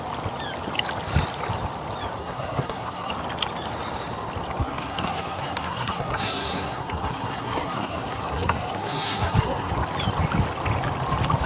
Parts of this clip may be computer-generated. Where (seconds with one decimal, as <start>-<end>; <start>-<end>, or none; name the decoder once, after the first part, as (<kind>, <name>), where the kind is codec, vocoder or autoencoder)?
2.2-3.1 (codec, SNAC); 4.6-9.7

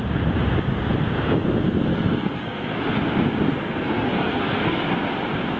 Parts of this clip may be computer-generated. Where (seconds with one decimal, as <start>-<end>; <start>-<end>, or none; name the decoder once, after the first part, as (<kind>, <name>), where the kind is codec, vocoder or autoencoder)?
1.9-2.8 (codec, SNAC); 3.5-4.8

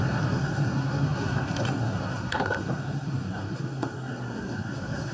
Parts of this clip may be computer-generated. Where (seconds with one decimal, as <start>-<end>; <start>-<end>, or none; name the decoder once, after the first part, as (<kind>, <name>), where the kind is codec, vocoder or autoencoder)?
0.0-5.1 (codec, SNAC)

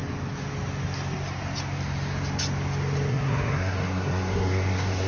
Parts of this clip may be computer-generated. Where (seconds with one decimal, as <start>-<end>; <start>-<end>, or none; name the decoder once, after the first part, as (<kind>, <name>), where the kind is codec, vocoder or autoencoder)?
3.1-5.1 (codec, SNAC)

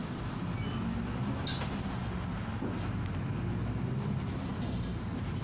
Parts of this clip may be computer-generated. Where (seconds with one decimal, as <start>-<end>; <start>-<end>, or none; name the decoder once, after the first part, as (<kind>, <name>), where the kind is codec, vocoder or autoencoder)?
none

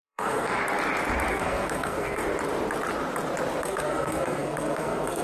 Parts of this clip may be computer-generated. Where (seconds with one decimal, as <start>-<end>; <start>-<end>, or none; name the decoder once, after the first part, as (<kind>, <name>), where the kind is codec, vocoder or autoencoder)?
0.0-0.6 (codec, SNAC); 1.3-2.2; 3.6-5.2